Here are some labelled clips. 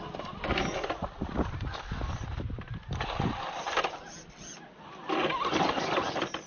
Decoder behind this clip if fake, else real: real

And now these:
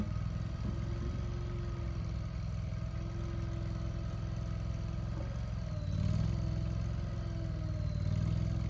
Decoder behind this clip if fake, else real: real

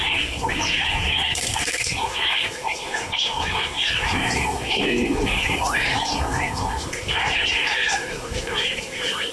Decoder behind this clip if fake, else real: fake, codec, SNAC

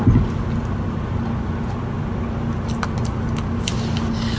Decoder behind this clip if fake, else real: real